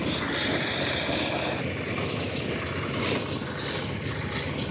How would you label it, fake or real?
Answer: real